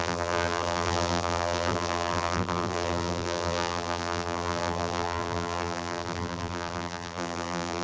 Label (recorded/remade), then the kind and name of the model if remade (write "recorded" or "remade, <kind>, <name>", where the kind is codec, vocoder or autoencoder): remade, vocoder, BigVGAN v2